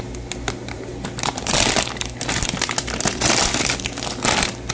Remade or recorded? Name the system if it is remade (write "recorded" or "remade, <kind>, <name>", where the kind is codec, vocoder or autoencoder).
remade, vocoder, BigVGAN v2